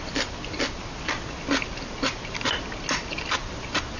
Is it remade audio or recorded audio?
recorded